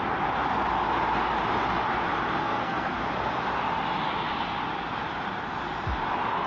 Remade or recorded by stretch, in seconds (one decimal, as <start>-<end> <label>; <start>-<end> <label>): 0.0-2.4 recorded; 2.4-3.0 remade; 3.0-6.5 recorded